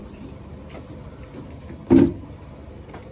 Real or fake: real